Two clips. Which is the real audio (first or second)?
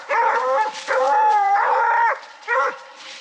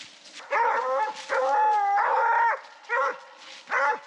second